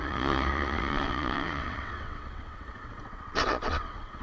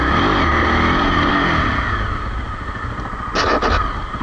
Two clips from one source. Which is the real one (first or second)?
second